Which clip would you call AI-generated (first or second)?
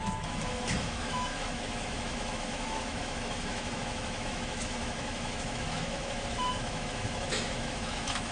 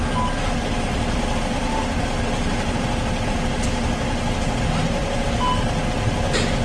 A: first